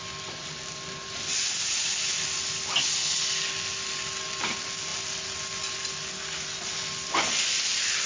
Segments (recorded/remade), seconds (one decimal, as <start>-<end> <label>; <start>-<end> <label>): 0.0-8.1 recorded